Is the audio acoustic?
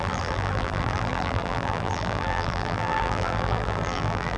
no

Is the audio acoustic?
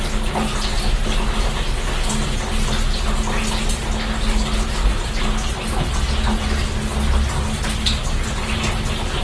yes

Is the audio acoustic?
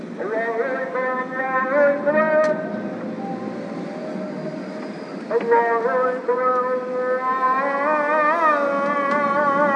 yes